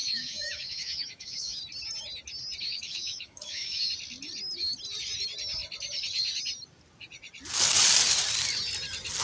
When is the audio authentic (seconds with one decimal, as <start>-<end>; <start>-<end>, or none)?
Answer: 1.6-2.7; 3.9-9.2